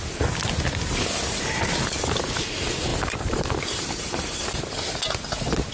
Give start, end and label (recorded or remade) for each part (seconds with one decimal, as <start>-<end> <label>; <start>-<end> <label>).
0.0-2.9 recorded; 2.9-4.6 remade; 4.6-5.7 recorded

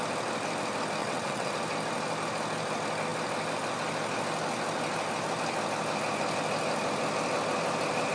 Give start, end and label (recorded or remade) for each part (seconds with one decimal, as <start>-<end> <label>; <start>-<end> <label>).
0.0-1.0 recorded; 1.0-1.5 remade; 1.5-8.1 recorded